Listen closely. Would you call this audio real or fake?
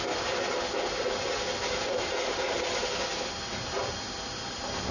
real